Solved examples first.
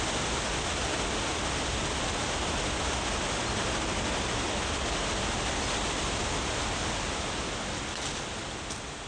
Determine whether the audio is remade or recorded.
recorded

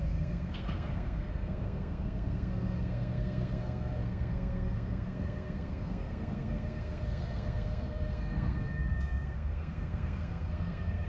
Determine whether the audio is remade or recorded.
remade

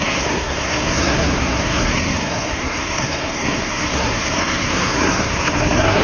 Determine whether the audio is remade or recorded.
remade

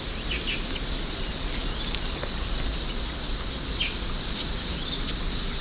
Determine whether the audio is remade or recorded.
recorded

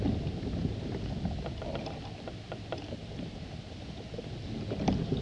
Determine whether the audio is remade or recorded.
recorded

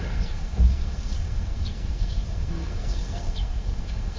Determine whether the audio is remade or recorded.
remade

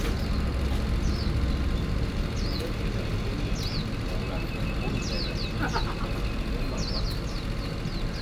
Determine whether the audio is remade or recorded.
recorded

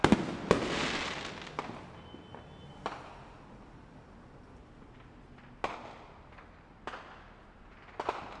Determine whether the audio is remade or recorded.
recorded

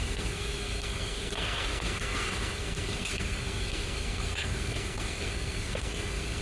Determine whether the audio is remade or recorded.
remade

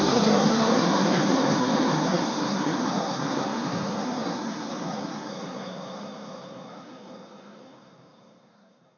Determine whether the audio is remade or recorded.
remade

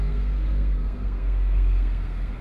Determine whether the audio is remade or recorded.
remade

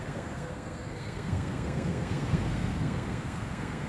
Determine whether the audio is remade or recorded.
remade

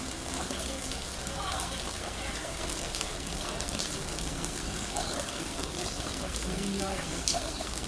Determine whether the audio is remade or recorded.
remade